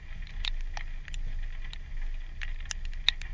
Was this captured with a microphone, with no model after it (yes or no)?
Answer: yes